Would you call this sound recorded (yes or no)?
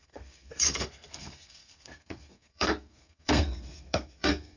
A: no